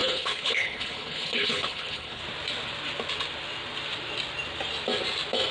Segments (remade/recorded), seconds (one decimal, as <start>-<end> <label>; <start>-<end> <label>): 0.0-2.2 remade; 2.2-5.5 recorded